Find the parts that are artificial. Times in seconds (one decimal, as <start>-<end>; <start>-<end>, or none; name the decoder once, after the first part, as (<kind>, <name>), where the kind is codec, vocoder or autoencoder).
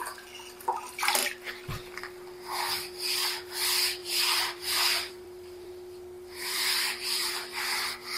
4.0-5.7 (vocoder, BigVGAN v2); 6.4-7.3